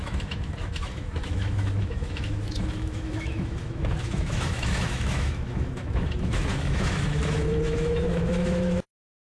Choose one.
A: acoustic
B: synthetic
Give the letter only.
B